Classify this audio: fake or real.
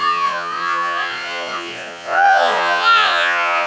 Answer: fake